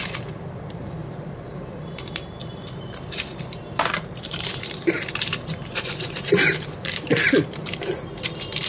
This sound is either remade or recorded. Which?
remade